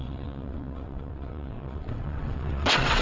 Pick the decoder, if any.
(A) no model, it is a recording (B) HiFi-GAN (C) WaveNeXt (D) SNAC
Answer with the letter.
C